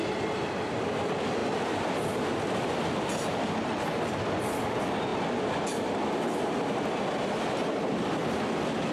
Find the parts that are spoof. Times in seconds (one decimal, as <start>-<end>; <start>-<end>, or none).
none